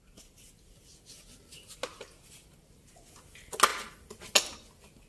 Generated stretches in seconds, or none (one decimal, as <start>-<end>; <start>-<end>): none